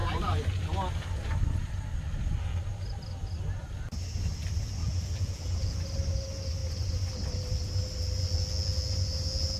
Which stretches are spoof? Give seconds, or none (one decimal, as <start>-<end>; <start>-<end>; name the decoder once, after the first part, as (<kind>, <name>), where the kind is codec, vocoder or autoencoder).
4.8-5.8 (vocoder, Vocos)